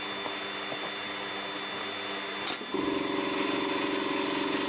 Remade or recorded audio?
recorded